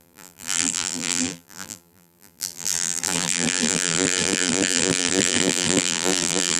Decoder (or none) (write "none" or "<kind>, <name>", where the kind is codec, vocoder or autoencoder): vocoder, BigVGAN v2